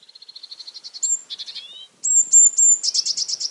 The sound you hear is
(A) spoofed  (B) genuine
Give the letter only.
B